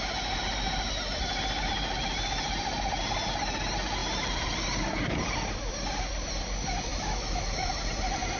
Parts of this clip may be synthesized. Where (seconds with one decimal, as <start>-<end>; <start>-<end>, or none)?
6.9-7.7